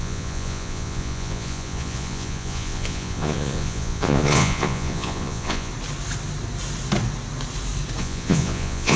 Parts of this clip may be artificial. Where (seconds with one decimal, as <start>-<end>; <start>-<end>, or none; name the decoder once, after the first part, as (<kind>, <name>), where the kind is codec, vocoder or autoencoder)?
0.0-5.7 (vocoder, Vocos); 8.0-9.0